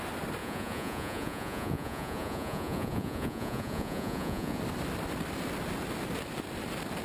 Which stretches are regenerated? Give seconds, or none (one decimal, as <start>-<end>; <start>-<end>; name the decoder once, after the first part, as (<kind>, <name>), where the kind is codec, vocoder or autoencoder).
0.4-4.6 (vocoder, Vocos)